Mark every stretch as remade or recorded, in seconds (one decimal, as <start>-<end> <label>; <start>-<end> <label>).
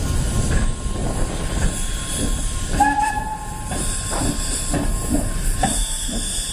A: 0.0-1.0 recorded; 1.0-4.2 remade; 4.2-6.5 recorded